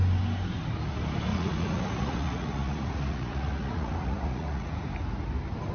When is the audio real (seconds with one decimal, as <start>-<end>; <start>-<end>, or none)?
0.0-1.3; 4.7-5.7